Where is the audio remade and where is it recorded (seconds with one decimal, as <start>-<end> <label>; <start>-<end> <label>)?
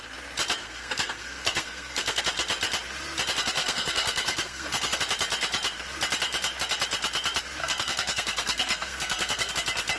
0.0-0.6 recorded; 0.6-2.2 remade; 2.2-3.6 recorded; 3.6-5.0 remade; 5.0-7.6 recorded; 7.6-9.5 remade; 9.5-10.0 recorded